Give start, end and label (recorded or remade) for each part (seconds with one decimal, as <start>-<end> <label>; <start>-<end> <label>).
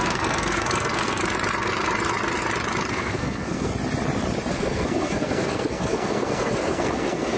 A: 0.0-1.2 remade; 1.2-2.9 recorded; 2.9-3.7 remade; 3.7-4.5 recorded; 4.5-7.4 remade